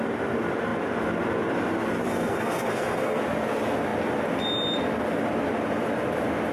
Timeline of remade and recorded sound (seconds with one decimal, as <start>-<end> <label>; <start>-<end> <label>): 0.0-2.1 recorded; 2.1-3.2 remade; 3.2-6.5 recorded